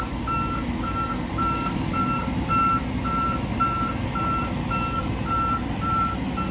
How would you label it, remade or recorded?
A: recorded